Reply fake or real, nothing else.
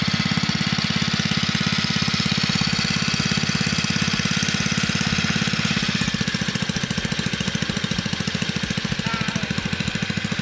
real